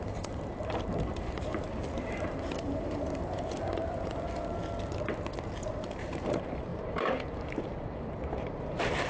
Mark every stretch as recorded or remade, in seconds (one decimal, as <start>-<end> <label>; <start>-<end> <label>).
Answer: 0.0-4.6 remade; 4.6-5.7 recorded; 5.7-9.1 remade